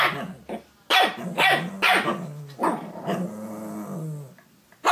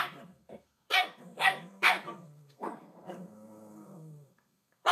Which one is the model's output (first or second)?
second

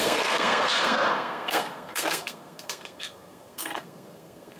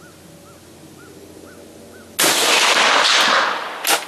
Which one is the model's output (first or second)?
first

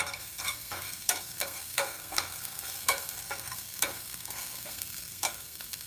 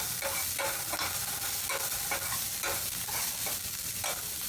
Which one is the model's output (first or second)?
first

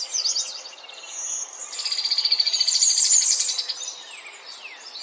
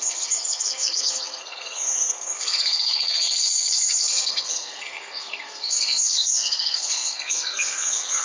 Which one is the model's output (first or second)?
second